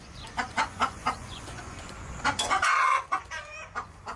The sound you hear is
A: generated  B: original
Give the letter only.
A